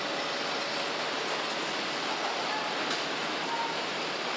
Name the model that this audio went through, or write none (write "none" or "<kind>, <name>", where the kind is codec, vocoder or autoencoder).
none